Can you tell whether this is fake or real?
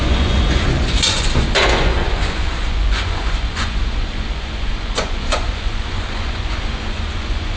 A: fake